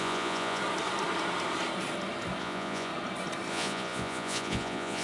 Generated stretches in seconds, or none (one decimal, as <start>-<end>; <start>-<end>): 0.0-0.6; 2.4-2.9; 3.5-5.0